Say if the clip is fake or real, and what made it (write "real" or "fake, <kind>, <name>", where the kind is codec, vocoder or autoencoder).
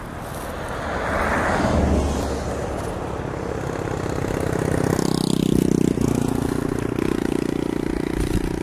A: real